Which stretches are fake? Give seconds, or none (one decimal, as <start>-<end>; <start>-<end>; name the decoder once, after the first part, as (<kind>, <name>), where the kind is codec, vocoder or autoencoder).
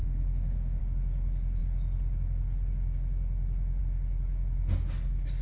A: 0.0-0.8 (autoencoder, DAC-VAE)